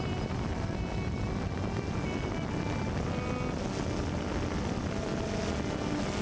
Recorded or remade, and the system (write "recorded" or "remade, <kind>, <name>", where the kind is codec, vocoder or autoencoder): recorded